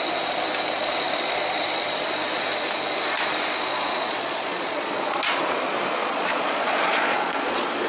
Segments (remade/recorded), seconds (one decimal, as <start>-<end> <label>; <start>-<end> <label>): 0.0-3.7 recorded; 3.7-5.2 remade; 5.2-6.0 recorded; 6.0-7.9 remade